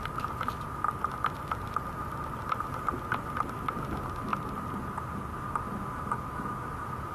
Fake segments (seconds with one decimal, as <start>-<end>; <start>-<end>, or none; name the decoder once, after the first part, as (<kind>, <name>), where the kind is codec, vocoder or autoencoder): 4.3-5.0 (vocoder, BigVGAN v2)